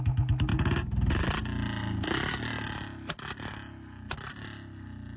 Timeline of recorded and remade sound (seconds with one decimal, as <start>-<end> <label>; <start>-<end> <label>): 0.0-5.2 recorded

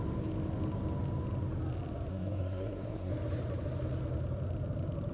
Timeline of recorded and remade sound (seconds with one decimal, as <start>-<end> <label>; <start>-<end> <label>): 0.0-2.1 recorded; 2.1-3.1 remade; 3.1-5.1 recorded

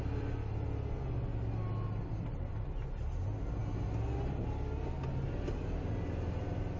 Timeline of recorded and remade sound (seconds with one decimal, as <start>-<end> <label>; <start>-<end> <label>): 0.0-6.8 recorded

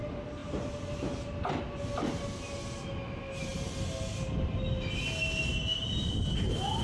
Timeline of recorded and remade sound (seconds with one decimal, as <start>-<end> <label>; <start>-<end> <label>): 0.0-5.9 recorded; 5.9-6.8 remade